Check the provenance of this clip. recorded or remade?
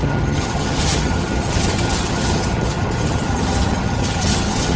remade